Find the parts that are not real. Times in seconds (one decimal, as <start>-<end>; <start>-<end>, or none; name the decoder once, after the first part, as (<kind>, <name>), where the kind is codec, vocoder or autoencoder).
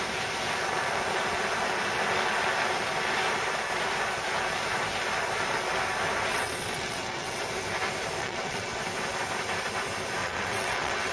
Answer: 6.3-7.4 (vocoder, WaveNeXt); 8.2-8.8; 10.2-11.1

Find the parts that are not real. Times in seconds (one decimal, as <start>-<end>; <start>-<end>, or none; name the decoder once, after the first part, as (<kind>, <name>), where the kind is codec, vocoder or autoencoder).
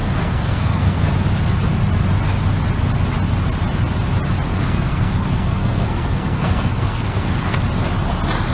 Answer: 0.0-1.1 (codec, SNAC); 4.5-7.6